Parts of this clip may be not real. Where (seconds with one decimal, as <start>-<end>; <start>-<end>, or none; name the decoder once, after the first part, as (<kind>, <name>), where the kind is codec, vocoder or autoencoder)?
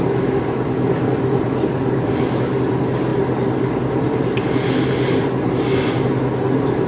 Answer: none